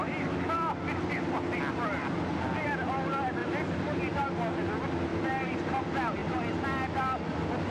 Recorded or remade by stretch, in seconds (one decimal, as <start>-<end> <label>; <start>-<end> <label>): 0.0-3.4 recorded; 3.4-4.3 remade; 4.3-5.1 recorded; 5.1-5.8 remade; 5.8-7.7 recorded